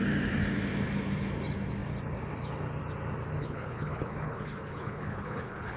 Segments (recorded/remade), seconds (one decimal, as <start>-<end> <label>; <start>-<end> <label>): 0.0-3.4 recorded; 3.4-5.8 remade